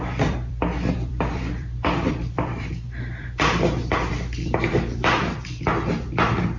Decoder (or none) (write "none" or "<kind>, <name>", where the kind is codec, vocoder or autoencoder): vocoder, BigVGAN v2